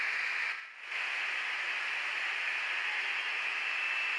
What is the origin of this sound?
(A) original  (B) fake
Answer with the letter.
A